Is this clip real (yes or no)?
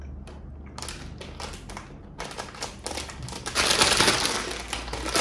yes